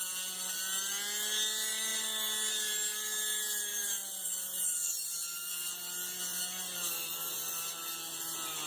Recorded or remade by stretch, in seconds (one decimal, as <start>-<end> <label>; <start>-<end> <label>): 0.0-3.7 recorded; 3.7-5.5 remade; 5.5-8.7 recorded